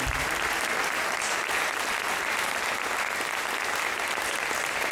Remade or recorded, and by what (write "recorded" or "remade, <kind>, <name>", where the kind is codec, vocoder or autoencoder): recorded